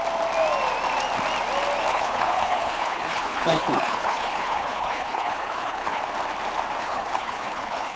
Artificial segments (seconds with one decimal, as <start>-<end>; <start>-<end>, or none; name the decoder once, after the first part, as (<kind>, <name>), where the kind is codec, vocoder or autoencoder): 1.9-6.0 (codec, HILCodec); 6.8-8.0